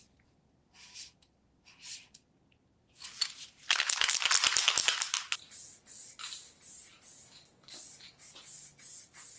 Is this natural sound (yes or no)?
yes